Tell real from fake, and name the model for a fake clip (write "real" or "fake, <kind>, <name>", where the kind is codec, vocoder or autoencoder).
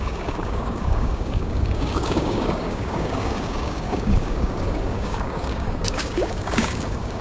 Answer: fake, codec, DAC